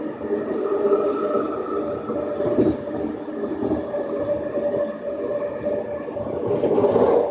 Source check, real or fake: real